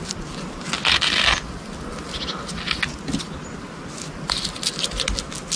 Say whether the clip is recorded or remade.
recorded